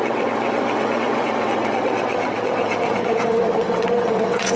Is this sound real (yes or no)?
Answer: no